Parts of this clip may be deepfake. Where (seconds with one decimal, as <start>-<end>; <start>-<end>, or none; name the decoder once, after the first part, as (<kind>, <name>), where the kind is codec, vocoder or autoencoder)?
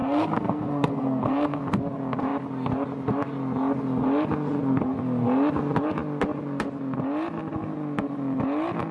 0.0-1.6 (codec, SNAC)